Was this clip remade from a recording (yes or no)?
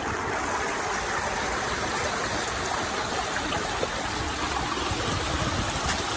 no